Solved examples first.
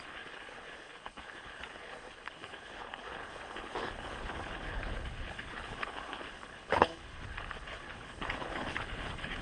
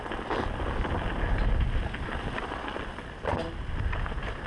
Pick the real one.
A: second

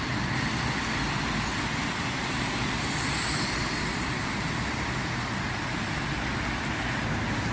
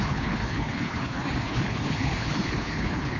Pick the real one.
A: first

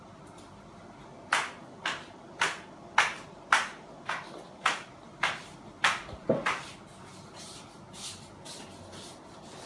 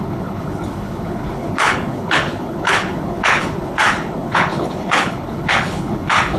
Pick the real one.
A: first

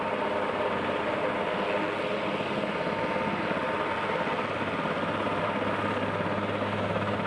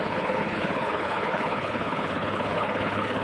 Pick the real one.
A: first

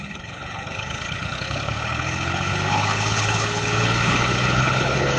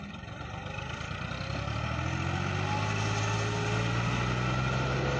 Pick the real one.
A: second